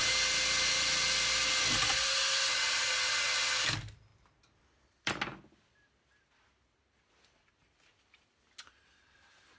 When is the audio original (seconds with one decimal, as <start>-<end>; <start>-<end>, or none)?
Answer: 0.0-9.6